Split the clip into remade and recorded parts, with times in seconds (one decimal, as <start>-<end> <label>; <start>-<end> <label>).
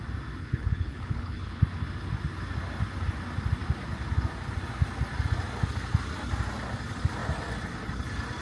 0.0-0.4 recorded; 0.4-1.6 remade; 1.6-8.4 recorded